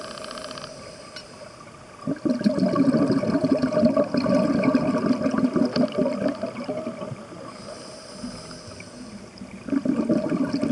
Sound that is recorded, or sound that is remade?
recorded